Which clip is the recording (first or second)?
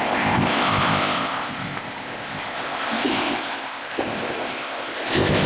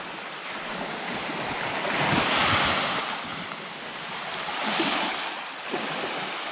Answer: second